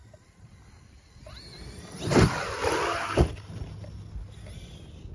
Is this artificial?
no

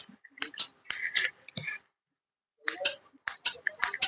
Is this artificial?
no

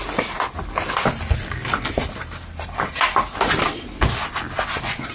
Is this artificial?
no